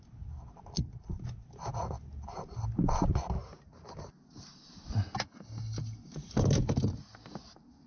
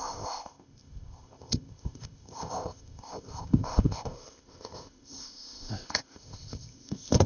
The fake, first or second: second